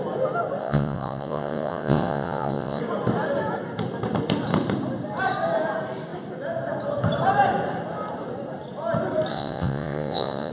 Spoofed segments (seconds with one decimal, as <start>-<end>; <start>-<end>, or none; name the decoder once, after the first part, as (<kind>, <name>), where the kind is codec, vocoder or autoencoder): 0.6-2.8 (vocoder, WaveNeXt); 9.3-10.5